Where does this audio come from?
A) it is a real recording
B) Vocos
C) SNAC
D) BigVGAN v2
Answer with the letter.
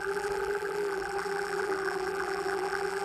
D